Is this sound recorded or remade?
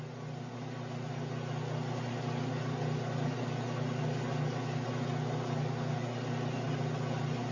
recorded